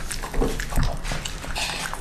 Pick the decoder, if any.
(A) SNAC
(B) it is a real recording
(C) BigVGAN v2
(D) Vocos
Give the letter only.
B